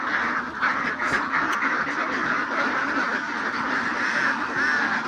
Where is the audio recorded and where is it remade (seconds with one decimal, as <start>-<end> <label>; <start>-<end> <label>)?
0.0-5.1 recorded